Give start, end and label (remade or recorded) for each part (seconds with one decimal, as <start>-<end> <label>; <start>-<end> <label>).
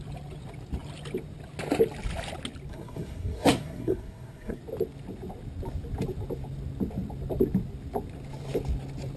0.0-2.7 recorded; 2.7-4.6 remade; 4.6-9.2 recorded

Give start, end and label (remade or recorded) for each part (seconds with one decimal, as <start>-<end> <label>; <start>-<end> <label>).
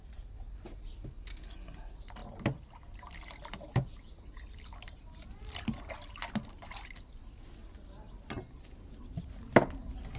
0.0-10.2 recorded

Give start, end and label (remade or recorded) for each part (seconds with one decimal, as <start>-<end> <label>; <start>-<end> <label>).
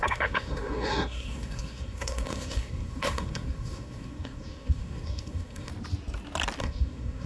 0.0-5.7 remade; 5.7-6.6 recorded; 6.6-7.3 remade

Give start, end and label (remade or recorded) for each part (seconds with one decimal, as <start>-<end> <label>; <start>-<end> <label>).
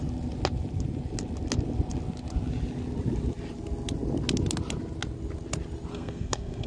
0.0-5.9 recorded; 5.9-6.7 remade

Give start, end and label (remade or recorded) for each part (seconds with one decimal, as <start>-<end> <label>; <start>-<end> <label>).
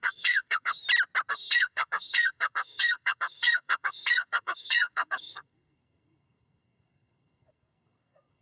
0.0-0.8 remade; 0.8-1.3 recorded; 1.3-8.4 remade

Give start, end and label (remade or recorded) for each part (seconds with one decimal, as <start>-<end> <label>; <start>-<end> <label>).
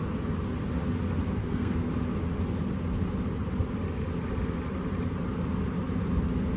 0.0-1.4 recorded; 1.4-1.9 remade; 1.9-6.6 recorded